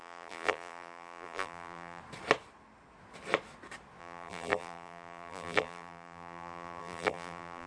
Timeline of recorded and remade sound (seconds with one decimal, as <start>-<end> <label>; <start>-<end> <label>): 0.0-2.0 remade; 2.0-4.0 recorded; 4.0-7.7 remade